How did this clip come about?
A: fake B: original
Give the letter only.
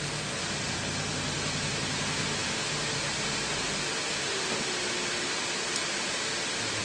B